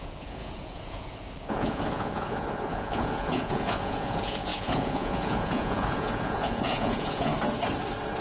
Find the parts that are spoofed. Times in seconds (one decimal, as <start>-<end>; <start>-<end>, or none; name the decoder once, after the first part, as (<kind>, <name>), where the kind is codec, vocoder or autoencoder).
0.0-7.3 (vocoder, Vocos)

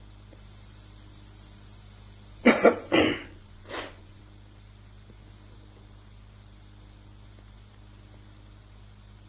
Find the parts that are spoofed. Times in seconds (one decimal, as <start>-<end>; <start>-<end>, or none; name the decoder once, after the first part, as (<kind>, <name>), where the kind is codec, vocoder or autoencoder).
2.4-4.2 (vocoder, Vocos)

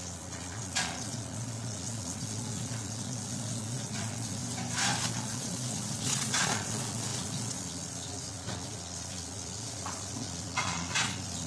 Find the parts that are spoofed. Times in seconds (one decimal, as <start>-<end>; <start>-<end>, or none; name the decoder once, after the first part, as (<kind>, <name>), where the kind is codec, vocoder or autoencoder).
0.0-4.4 (vocoder, Vocos); 5.1-11.5

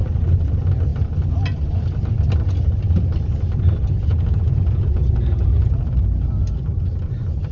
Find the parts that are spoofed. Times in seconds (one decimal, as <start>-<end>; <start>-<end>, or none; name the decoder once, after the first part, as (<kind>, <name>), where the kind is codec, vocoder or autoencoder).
4.1-5.8 (vocoder, Vocos)

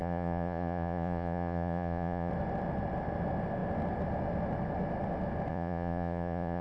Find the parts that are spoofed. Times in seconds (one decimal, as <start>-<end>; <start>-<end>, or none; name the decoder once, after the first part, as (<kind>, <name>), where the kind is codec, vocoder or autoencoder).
0.0-2.3 (vocoder, Vocos); 5.5-6.6

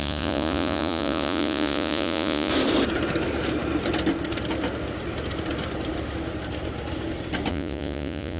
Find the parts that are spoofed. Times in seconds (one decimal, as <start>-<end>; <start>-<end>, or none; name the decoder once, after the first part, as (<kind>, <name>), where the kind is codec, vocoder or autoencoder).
0.0-2.5 (vocoder, Vocos); 7.5-8.4

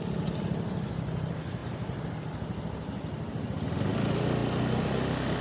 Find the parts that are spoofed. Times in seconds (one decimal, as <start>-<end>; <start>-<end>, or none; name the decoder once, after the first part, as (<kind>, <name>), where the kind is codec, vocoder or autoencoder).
none